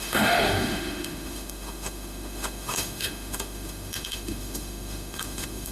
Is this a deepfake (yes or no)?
yes